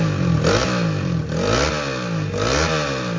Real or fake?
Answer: real